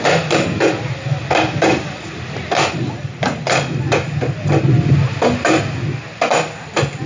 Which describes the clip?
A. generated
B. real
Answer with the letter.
B